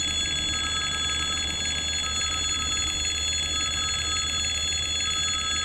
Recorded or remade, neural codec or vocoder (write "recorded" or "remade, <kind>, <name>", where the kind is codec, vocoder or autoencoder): recorded